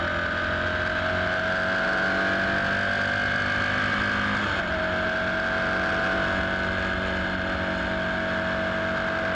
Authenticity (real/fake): real